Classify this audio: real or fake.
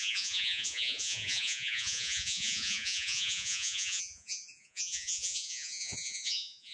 fake